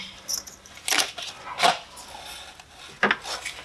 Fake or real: real